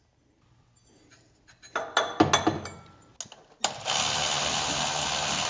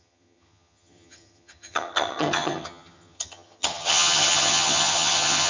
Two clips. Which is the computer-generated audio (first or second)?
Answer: second